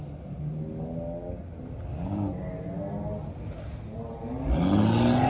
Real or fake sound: real